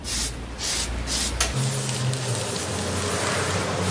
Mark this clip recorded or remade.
recorded